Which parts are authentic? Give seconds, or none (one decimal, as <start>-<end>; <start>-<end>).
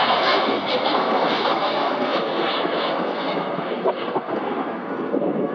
none